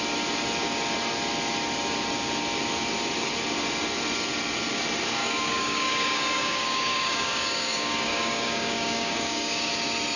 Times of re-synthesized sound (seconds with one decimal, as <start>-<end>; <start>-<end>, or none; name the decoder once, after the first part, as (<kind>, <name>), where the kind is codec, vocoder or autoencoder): 5.2-9.7 (codec, DAC)